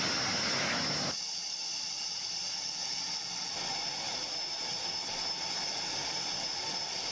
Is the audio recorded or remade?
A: recorded